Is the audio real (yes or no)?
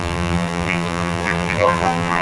no